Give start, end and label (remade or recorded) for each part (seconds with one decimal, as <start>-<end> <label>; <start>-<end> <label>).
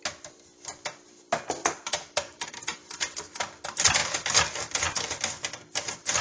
0.0-6.2 recorded